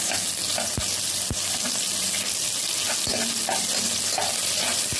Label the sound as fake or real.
real